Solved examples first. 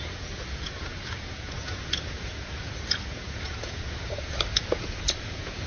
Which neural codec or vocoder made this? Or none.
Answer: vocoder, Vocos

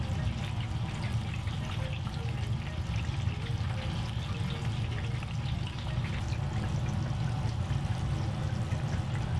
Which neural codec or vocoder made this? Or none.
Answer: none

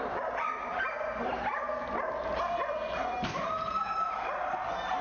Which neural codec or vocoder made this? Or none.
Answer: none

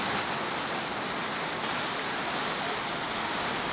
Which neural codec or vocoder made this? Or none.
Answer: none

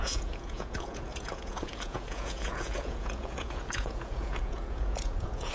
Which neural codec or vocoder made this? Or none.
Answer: vocoder, Vocos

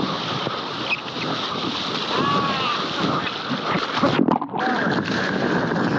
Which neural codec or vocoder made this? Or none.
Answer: none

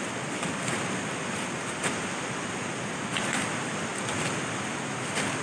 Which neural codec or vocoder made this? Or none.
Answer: none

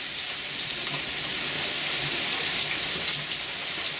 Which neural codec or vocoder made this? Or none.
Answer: none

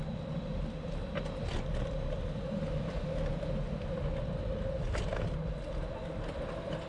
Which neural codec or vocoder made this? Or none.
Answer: none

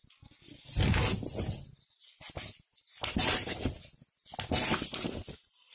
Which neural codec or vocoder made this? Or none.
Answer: none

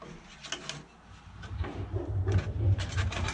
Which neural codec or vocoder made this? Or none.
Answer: none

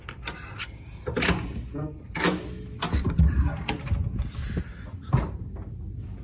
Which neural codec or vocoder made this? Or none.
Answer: none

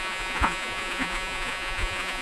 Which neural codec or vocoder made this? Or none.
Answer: vocoder, Vocos